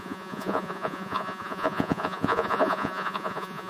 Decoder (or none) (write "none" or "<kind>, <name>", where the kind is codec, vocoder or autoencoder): vocoder, Vocos